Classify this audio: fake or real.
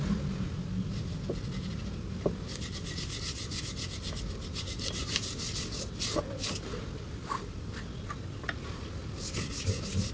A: real